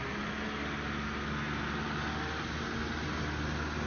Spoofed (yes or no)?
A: no